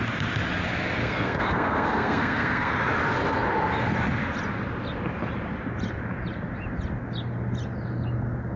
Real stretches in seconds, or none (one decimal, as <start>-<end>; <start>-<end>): 0.0-1.0; 2.7-8.6